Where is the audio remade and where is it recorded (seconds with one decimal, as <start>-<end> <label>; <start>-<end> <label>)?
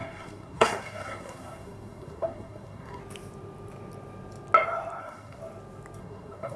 0.0-3.0 remade; 3.0-5.0 recorded; 5.0-5.4 remade; 5.4-6.0 recorded; 6.0-6.6 remade